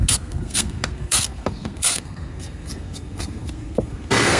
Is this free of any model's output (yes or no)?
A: no